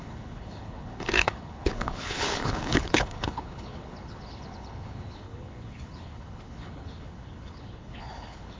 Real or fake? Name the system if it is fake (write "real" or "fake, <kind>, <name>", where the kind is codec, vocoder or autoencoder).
fake, codec, HILCodec